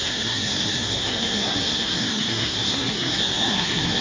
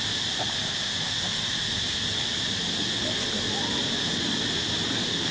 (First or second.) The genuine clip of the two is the second